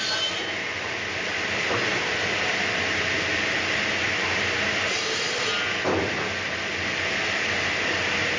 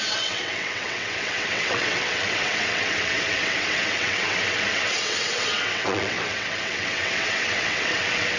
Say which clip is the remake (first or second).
second